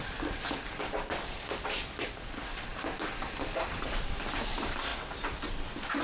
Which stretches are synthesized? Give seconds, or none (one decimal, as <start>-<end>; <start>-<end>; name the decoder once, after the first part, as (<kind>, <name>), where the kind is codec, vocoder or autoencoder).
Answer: none